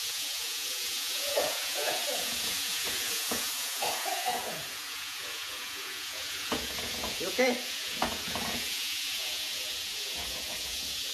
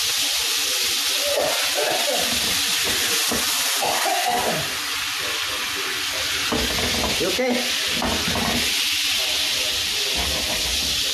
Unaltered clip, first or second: second